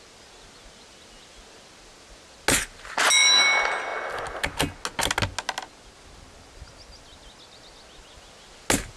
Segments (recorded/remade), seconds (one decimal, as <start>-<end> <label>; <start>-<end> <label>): 0.0-9.0 recorded